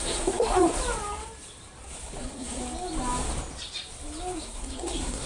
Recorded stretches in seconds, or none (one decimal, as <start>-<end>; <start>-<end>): 0.8-2.2; 2.6-4.4